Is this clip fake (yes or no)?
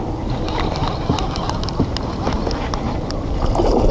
no